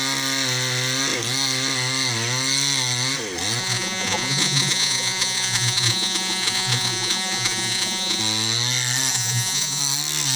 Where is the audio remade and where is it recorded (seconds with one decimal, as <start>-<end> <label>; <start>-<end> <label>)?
0.0-3.6 recorded; 3.6-8.2 remade; 8.2-9.1 recorded; 9.1-9.8 remade; 9.8-10.4 recorded